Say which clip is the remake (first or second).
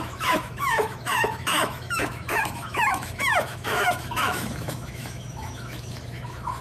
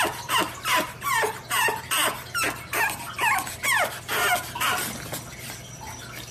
first